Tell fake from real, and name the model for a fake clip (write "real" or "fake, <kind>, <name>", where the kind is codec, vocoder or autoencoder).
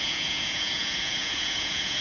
fake, vocoder, Vocos